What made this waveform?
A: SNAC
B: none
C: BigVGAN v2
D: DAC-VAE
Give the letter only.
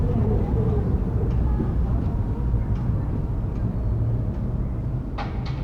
B